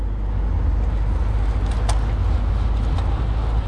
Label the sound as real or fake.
real